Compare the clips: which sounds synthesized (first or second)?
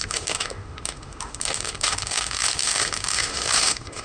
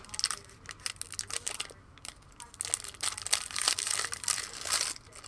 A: first